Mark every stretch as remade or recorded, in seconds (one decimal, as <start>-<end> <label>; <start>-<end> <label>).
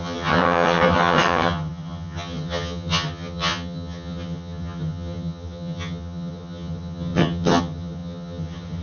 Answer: 0.0-8.8 remade